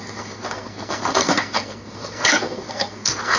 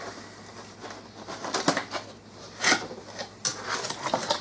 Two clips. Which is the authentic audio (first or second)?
second